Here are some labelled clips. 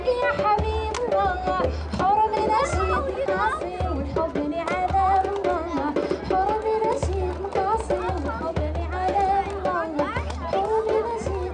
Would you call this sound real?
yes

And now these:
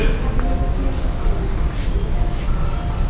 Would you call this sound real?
yes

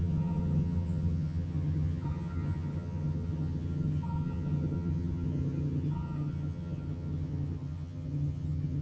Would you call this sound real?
no